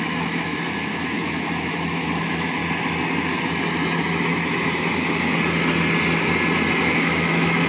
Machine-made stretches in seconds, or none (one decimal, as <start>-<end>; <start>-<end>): 0.0-2.6; 6.8-7.7

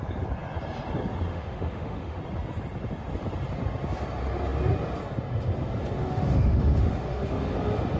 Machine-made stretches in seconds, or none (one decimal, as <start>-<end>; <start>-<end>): 1.3-2.2; 6.0-7.5

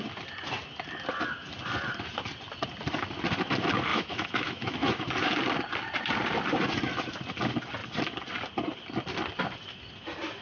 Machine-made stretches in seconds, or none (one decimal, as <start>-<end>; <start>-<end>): 3.9-5.1

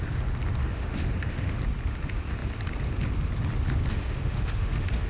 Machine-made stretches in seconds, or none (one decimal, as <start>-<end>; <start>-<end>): 0.6-1.6; 3.9-5.1

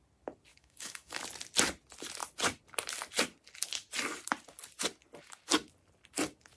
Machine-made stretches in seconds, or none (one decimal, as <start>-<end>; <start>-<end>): 0.5-1.2

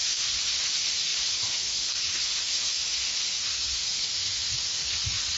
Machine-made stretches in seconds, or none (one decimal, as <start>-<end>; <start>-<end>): 0.0-5.4